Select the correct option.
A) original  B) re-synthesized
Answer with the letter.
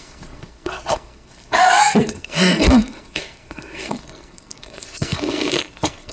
B